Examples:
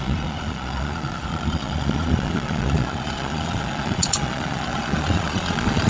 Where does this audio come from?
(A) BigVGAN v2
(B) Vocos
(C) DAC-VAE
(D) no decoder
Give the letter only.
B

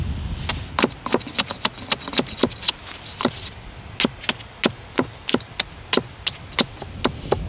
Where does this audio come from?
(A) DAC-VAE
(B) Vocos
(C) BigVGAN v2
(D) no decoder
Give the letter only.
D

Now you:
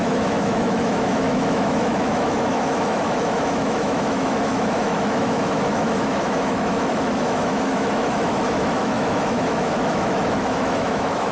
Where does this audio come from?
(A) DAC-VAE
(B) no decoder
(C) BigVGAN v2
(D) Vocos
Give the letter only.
A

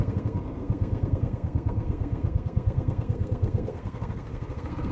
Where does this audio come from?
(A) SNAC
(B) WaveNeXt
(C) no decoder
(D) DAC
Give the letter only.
A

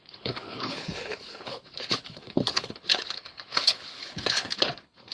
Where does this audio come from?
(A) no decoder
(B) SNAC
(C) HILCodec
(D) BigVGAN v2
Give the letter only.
C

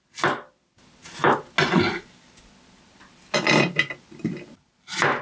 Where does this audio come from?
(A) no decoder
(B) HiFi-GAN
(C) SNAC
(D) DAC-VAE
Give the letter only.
A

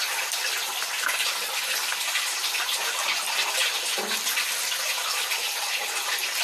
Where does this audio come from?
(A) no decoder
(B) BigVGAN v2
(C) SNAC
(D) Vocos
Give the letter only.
A